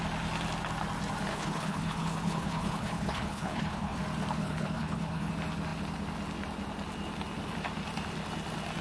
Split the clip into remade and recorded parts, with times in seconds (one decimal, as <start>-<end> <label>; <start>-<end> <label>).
0.0-1.3 recorded; 1.3-4.0 remade; 4.0-4.4 recorded; 4.4-5.3 remade; 5.3-8.8 recorded